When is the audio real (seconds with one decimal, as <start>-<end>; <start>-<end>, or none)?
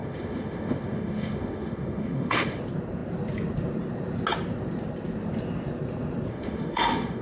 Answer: 2.6-6.3